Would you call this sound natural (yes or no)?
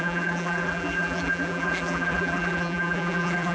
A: no